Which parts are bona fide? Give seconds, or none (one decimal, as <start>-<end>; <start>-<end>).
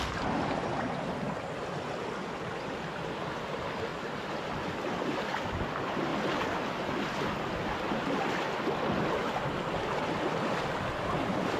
0.0-11.6